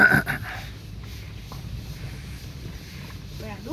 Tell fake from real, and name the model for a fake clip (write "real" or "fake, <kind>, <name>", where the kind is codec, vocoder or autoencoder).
real